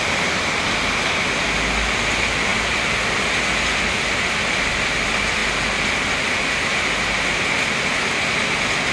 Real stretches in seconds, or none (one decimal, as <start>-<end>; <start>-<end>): 0.0-8.9